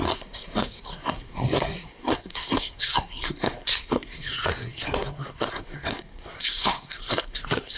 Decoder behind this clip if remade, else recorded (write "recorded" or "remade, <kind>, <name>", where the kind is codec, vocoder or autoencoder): remade, codec, SNAC